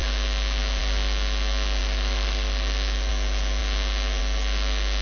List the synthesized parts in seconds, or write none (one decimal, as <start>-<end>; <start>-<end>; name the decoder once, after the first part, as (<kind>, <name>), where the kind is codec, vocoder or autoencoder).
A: 1.8-3.1 (autoencoder, DAC-VAE)